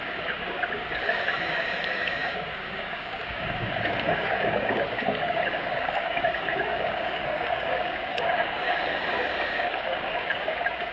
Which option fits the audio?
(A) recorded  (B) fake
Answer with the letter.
B